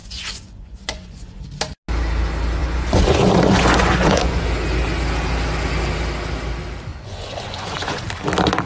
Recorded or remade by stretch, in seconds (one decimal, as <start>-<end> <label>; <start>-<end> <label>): 0.0-1.4 remade; 1.4-2.6 recorded; 2.6-4.4 remade; 4.4-6.9 recorded; 6.9-8.0 remade; 8.0-8.7 recorded